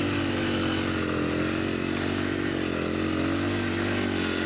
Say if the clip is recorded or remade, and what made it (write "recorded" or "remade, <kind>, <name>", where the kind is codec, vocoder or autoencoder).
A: recorded